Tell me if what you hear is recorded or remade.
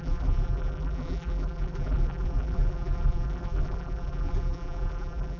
remade